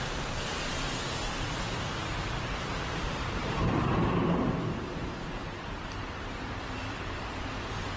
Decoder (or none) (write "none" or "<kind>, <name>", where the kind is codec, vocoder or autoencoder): vocoder, BigVGAN v2